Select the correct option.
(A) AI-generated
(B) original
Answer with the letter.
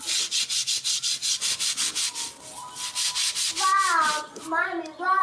B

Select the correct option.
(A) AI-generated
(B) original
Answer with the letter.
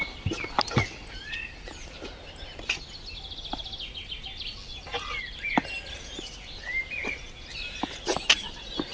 B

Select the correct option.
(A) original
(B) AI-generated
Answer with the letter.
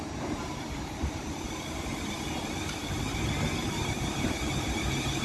B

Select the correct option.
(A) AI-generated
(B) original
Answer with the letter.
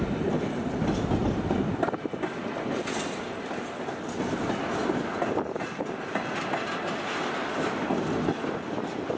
B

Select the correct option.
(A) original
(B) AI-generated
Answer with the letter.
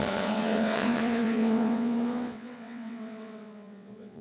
B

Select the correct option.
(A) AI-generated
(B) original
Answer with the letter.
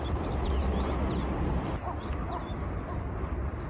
B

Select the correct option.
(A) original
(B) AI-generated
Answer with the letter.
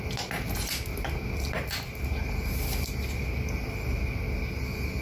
A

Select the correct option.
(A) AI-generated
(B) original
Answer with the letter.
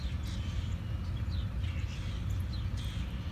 B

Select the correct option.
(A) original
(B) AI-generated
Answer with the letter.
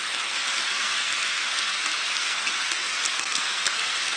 B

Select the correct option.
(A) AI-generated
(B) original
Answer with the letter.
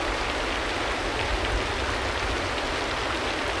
B